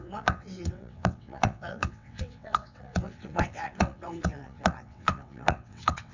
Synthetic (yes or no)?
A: yes